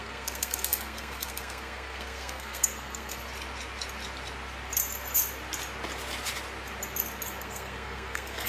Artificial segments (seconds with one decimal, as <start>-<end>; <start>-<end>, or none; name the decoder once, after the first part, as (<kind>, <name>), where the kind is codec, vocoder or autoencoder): 0.0-3.2 (codec, SNAC); 7.4-8.5